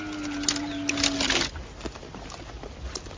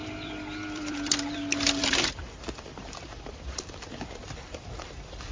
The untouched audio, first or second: first